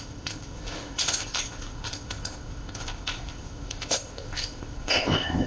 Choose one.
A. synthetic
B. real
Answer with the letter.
A